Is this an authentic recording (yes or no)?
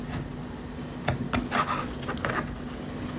yes